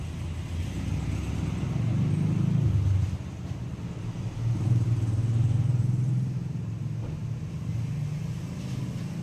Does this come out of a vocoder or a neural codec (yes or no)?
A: no